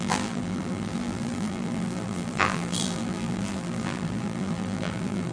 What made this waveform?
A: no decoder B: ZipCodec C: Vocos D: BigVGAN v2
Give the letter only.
D